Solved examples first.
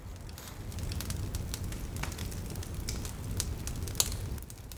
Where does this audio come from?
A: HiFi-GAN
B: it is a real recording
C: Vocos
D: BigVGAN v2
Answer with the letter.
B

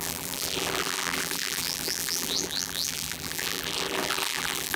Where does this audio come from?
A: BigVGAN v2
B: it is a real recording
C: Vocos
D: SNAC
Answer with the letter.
A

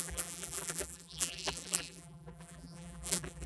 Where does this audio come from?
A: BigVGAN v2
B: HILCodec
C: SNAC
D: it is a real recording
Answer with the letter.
A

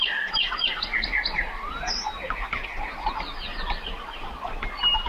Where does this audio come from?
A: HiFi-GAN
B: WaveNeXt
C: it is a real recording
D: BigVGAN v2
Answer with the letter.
C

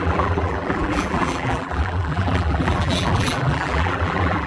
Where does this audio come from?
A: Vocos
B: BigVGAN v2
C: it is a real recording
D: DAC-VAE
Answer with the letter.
B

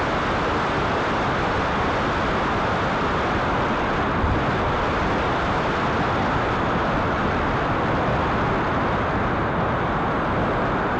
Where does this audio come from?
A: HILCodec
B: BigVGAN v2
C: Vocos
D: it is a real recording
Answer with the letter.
D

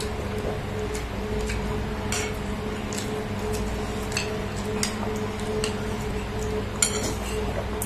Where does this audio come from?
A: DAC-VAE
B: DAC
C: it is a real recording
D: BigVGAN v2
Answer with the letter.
C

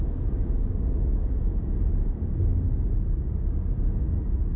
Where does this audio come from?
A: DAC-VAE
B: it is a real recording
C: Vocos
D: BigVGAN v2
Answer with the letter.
B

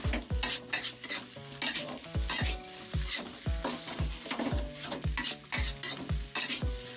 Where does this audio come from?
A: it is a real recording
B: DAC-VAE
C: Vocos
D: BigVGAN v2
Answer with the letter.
A